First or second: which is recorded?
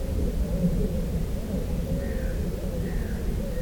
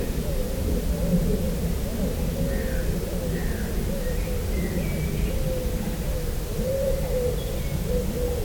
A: second